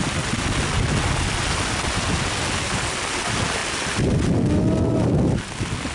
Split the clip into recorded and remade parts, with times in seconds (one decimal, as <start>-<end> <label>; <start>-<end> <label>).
0.0-5.9 recorded